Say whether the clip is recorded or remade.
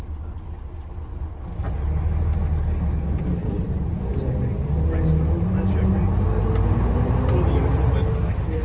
recorded